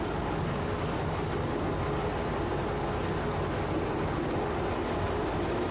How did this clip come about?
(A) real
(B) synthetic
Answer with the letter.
A